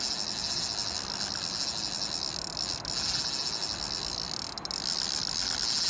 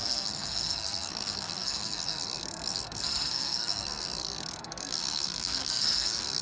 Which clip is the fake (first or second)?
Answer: second